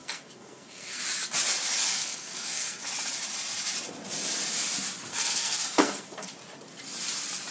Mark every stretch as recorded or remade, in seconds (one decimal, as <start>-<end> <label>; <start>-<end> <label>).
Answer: 0.0-1.0 remade; 1.0-1.9 recorded; 1.9-2.8 remade; 2.8-5.1 recorded; 5.1-6.3 remade; 6.3-7.5 recorded